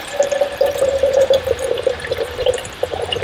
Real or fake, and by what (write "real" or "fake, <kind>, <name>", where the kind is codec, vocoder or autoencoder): fake, vocoder, BigVGAN v2